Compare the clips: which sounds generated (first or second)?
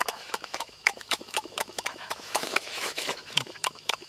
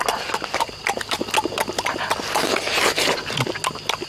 first